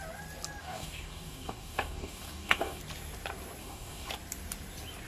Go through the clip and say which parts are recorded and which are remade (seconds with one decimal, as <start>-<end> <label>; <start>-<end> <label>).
0.0-0.6 recorded; 0.6-2.8 remade; 2.8-3.6 recorded; 3.6-4.1 remade; 4.1-5.1 recorded